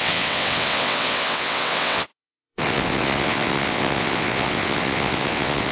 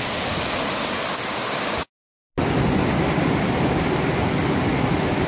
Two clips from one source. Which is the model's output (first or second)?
first